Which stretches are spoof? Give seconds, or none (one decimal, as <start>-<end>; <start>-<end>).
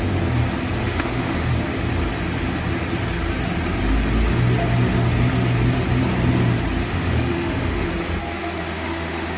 0.8-1.5; 6.8-7.9; 8.4-9.4